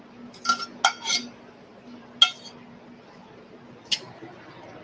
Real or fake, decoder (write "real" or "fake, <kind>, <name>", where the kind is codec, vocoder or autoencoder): real